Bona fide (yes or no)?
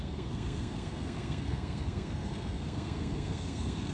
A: no